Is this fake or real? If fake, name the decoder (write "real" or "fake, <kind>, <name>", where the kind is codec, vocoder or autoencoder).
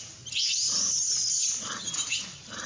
real